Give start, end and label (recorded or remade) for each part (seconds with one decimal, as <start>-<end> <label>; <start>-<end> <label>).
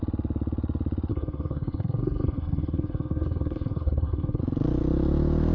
0.0-1.1 recorded; 1.1-4.4 remade; 4.4-5.5 recorded